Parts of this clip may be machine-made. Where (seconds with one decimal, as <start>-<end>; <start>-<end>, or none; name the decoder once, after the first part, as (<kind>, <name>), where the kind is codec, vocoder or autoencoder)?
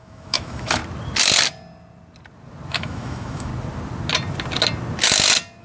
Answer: 0.0-0.8 (autoencoder, DAC-VAE); 2.7-3.5